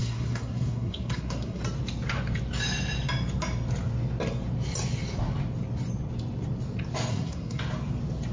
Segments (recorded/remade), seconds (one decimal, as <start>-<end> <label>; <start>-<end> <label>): 0.0-1.6 remade; 1.6-7.1 recorded; 7.1-7.6 remade; 7.6-8.3 recorded